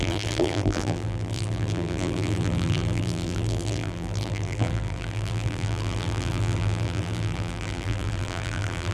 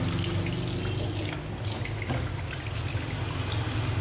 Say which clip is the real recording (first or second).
second